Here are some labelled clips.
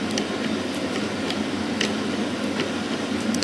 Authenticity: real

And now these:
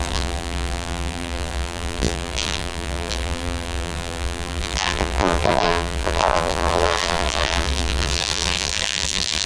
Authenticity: fake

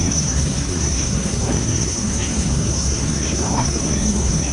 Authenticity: fake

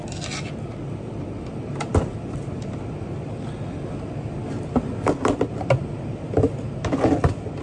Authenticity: real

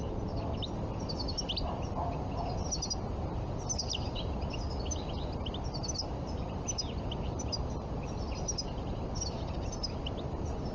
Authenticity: real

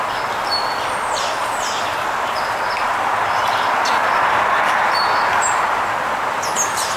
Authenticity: real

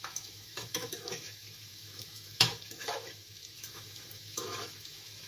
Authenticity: fake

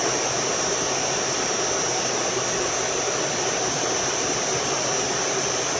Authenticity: real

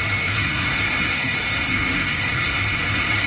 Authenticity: fake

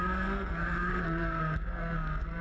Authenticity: fake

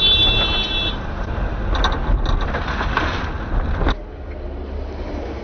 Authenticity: real